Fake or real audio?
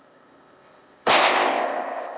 fake